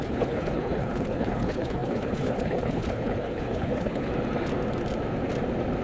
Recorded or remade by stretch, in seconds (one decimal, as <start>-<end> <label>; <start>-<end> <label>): 0.0-4.1 remade; 4.1-5.8 recorded